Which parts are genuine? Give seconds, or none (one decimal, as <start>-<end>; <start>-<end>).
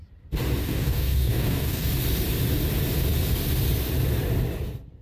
0.0-0.6; 1.9-5.0